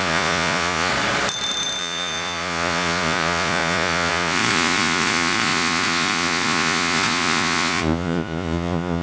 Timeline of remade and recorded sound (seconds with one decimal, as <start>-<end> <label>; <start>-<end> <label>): 0.0-0.9 remade; 0.9-1.8 recorded; 1.8-9.0 remade